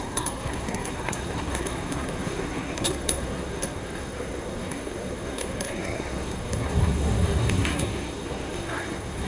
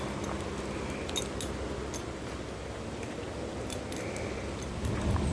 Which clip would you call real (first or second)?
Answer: second